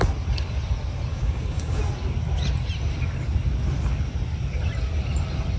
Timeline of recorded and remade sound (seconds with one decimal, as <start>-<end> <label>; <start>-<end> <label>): 0.0-1.1 recorded; 1.1-1.8 remade; 1.8-5.6 recorded